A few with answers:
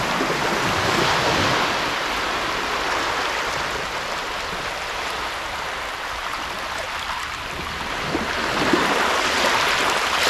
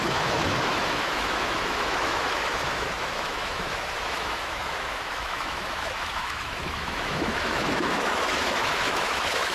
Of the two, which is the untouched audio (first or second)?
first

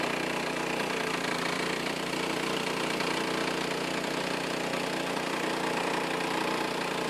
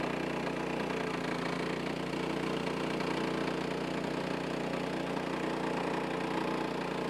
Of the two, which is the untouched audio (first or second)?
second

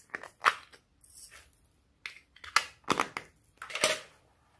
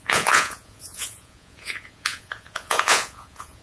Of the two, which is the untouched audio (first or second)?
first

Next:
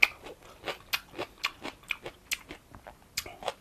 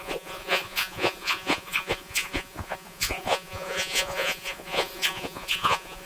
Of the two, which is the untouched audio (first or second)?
first